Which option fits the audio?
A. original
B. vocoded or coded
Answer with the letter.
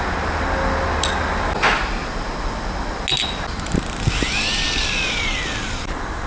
A